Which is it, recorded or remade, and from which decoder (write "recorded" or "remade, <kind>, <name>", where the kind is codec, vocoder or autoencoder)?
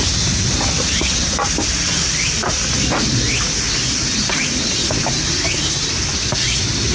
recorded